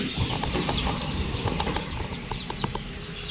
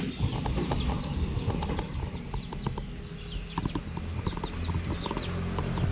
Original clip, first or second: second